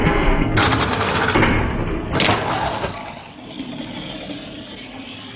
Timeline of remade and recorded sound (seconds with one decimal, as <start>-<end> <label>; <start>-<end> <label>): 0.0-0.6 remade; 0.6-5.4 recorded